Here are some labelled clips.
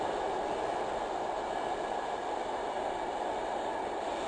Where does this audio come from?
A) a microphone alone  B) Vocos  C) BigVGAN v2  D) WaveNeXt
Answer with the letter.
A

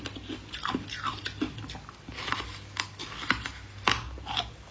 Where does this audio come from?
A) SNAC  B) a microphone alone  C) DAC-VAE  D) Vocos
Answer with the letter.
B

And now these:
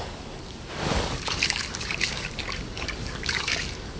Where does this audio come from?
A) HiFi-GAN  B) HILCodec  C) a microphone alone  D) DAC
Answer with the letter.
D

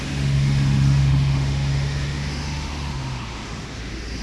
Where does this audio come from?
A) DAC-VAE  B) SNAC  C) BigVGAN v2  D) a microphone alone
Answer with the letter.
A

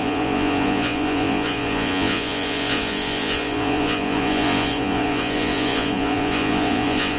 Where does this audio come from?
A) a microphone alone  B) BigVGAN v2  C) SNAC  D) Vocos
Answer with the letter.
D